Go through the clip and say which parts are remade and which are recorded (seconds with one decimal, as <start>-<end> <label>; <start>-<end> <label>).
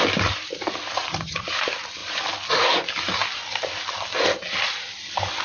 0.0-5.4 recorded